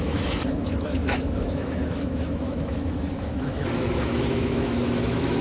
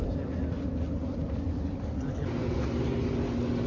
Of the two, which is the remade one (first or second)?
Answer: first